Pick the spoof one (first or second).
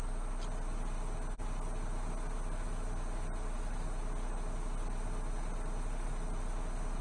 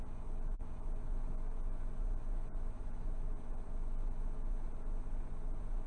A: second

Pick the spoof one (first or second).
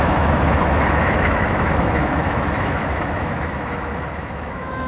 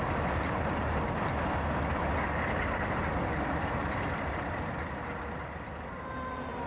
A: first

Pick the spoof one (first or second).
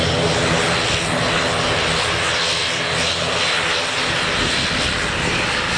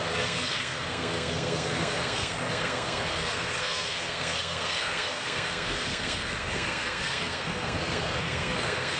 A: second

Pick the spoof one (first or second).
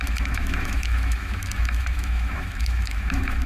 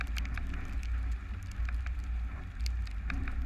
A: first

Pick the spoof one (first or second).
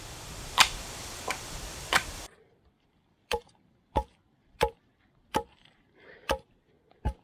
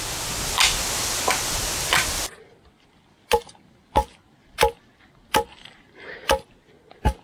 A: first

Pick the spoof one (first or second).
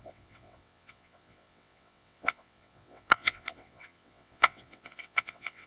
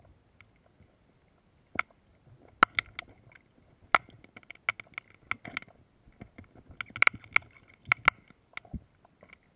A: first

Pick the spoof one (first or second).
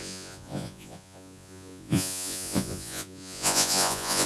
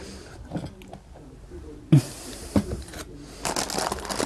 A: first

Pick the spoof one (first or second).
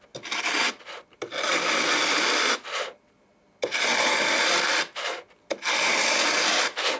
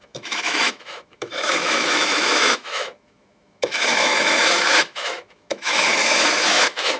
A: second